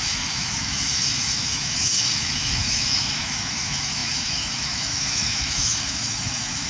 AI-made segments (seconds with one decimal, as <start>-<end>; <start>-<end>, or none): 0.0-6.7